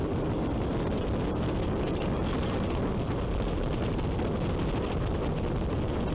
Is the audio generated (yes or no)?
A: no